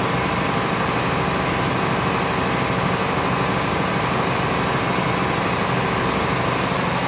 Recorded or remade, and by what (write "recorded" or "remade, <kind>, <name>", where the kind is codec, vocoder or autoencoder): recorded